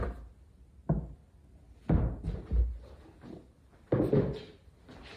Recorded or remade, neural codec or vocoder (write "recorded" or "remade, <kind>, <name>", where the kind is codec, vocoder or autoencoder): recorded